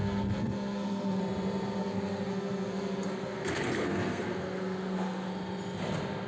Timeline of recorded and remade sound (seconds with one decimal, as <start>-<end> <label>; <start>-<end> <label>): 0.0-1.2 remade; 1.2-1.8 recorded; 1.8-5.3 remade; 5.3-6.3 recorded